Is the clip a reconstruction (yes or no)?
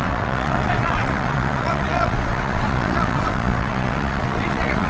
yes